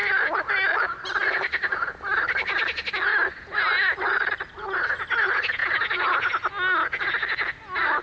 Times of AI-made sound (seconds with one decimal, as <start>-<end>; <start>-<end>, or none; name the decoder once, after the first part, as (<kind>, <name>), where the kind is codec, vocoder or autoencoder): 0.0-0.5 (vocoder, BigVGAN v2); 3.1-4.5